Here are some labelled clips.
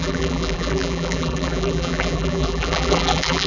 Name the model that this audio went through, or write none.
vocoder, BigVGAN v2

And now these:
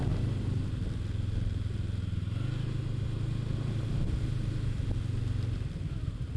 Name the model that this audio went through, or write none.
none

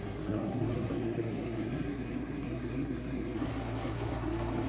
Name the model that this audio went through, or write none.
codec, SNAC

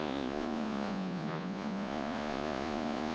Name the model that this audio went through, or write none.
vocoder, Vocos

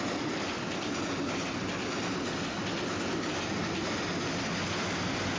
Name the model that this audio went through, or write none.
none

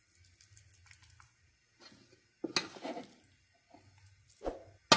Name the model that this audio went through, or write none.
none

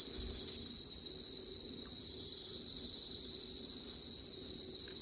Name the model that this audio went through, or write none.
none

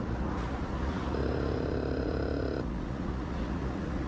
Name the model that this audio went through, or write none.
vocoder, Vocos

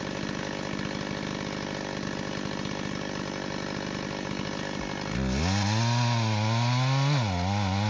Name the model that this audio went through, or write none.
none